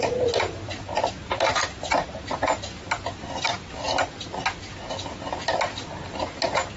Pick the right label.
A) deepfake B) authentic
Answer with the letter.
B